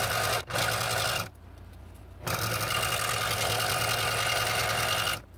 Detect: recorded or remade recorded